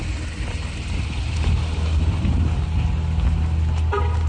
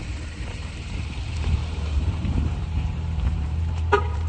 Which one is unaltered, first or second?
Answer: first